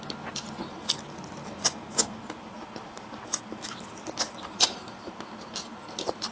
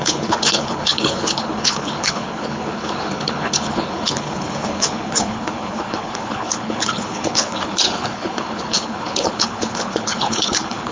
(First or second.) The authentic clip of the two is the first